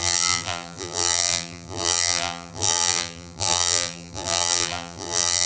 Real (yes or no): no